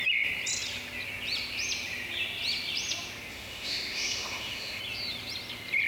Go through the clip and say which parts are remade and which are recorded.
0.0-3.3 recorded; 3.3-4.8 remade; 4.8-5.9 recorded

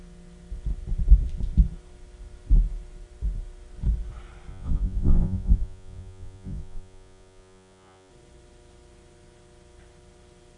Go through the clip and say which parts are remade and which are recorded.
0.0-4.5 recorded; 4.5-8.1 remade; 8.1-10.6 recorded

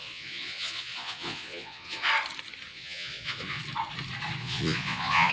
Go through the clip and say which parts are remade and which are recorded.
0.0-2.1 remade; 2.1-2.7 recorded; 2.7-3.6 remade; 3.6-4.4 recorded; 4.4-5.3 remade

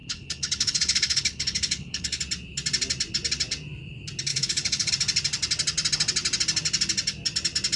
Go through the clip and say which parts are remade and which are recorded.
0.0-2.2 remade; 2.2-4.3 recorded; 4.3-4.9 remade; 4.9-7.8 recorded